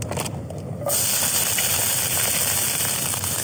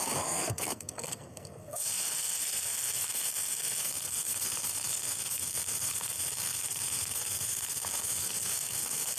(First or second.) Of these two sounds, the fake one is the second